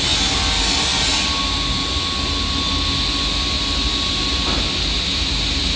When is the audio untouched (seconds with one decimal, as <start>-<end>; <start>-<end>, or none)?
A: 0.0-5.8